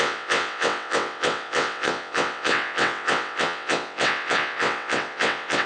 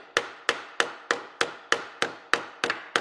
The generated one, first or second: first